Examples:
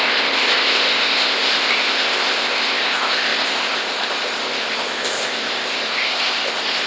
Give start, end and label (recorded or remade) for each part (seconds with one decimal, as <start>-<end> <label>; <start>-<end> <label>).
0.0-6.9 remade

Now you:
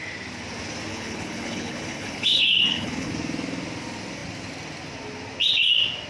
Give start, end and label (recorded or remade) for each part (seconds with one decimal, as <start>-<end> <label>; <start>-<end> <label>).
0.0-0.9 recorded; 0.9-3.1 remade; 3.1-6.1 recorded

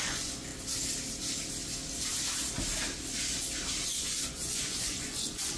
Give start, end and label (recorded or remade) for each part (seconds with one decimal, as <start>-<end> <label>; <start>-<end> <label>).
0.0-0.5 remade; 0.5-3.9 recorded; 3.9-5.6 remade

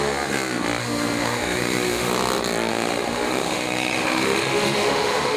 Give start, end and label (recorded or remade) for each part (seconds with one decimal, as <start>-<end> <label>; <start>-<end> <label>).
0.0-0.8 recorded; 0.8-2.1 remade; 2.1-2.7 recorded; 2.7-5.4 remade